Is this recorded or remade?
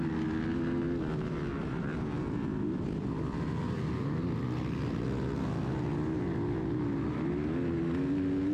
recorded